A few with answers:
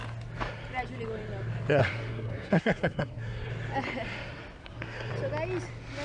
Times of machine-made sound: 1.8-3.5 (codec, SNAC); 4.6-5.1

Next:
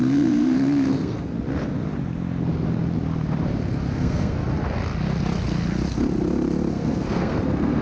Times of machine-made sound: 0.0-1.3 (codec, SNAC); 3.9-4.4; 6.7-7.8

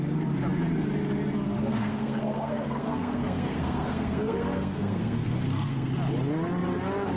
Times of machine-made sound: 1.6-5.9 (codec, SNAC)

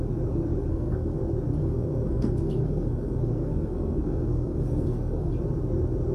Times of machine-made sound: 0.7-1.2 (codec, SNAC); 1.6-5.3